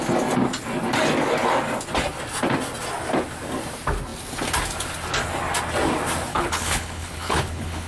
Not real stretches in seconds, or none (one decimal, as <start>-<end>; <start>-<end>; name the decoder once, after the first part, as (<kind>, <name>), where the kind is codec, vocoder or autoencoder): 6.3-7.9 (codec, HILCodec)